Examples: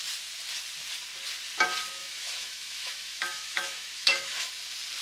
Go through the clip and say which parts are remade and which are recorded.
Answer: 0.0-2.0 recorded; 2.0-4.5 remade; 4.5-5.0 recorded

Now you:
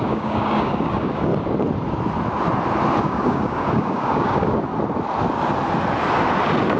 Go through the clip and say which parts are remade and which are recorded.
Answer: 0.0-1.3 remade; 1.3-3.0 recorded; 3.0-4.7 remade; 4.7-6.8 recorded

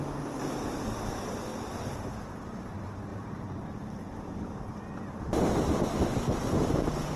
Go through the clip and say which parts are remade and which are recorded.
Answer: 0.0-3.1 recorded; 3.1-5.5 remade; 5.5-7.2 recorded

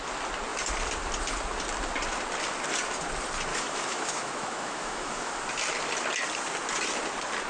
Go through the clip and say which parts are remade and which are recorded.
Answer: 0.0-3.5 recorded; 3.5-5.3 remade; 5.3-7.5 recorded